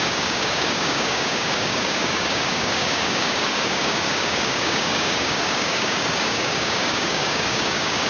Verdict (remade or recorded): remade